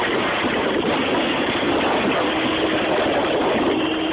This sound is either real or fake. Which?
real